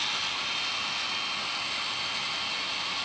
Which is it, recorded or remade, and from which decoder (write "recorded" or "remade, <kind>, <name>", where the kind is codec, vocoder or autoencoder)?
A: recorded